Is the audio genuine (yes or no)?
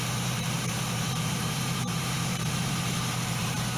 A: no